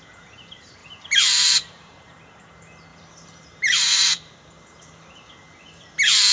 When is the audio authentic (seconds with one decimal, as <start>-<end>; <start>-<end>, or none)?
0.0-0.8; 2.2-2.9; 4.3-6.3